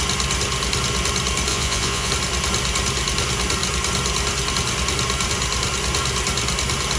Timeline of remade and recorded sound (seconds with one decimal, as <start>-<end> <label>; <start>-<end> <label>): 0.0-1.5 recorded; 1.5-2.1 remade; 2.1-7.0 recorded